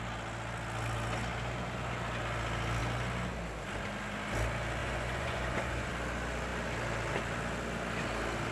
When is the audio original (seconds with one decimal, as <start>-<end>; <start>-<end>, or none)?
0.0-4.8; 5.9-8.5